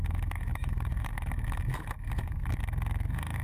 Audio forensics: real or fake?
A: fake